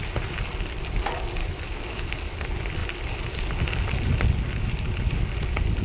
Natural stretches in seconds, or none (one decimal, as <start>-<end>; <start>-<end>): 0.0-1.4; 2.2-5.8